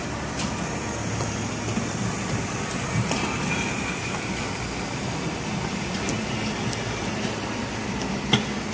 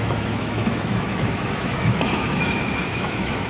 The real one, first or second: first